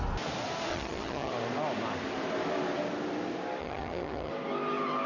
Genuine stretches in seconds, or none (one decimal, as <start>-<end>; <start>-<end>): 0.0-0.7; 1.3-3.6; 4.3-5.1